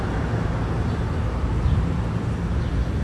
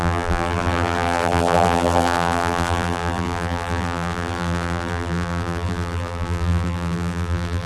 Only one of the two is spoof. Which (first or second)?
second